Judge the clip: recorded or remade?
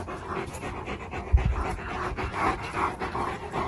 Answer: recorded